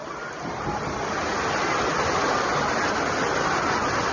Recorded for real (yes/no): yes